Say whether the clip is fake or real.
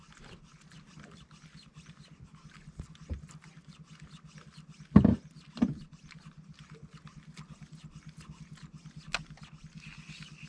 real